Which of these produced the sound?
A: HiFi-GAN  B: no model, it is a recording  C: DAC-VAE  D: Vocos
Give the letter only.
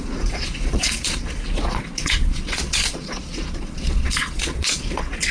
D